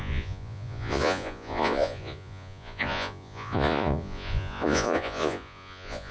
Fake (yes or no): yes